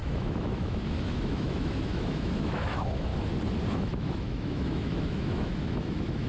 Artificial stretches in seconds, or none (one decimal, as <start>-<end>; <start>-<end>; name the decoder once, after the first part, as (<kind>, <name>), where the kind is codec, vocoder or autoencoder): 0.0-3.1 (autoencoder, DAC-VAE); 3.7-6.3